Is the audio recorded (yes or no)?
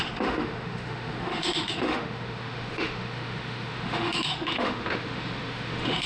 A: no